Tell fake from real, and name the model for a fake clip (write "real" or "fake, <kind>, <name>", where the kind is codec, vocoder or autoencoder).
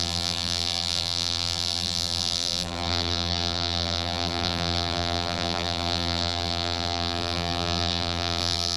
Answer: fake, vocoder, BigVGAN v2